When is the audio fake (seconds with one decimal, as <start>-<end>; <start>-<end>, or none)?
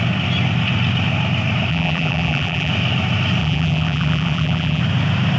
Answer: 1.7-2.7; 3.4-4.8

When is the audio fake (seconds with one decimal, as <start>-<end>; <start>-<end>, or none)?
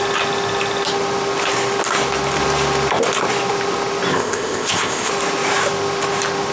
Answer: 4.1-5.1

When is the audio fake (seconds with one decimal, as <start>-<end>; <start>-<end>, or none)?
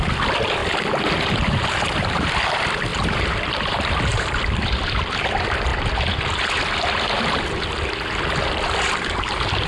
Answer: 0.0-0.6; 1.7-9.7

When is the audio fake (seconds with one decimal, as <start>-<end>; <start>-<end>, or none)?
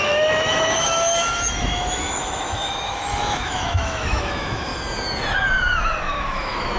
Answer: 0.0-4.7; 6.0-6.8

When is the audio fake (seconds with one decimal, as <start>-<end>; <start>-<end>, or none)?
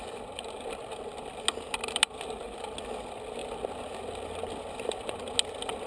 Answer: none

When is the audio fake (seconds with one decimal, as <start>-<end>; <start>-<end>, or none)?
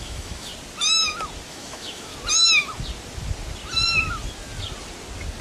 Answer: 0.0-0.5; 1.5-2.1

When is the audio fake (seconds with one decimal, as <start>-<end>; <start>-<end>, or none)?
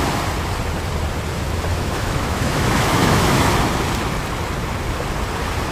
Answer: 1.7-3.5